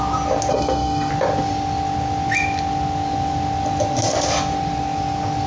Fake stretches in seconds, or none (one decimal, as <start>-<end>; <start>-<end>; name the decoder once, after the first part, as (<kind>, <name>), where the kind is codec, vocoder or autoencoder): 0.5-1.1 (codec, SNAC)